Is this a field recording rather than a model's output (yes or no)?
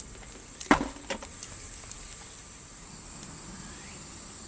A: yes